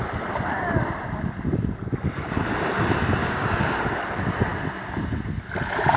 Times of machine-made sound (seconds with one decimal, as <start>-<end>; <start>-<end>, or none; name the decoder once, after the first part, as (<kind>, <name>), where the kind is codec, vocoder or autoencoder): 3.2-3.8 (codec, DAC)